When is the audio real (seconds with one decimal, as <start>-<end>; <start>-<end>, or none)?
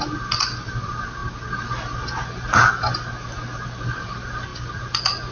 0.0-5.3